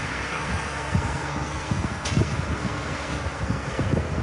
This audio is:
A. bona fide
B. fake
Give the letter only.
B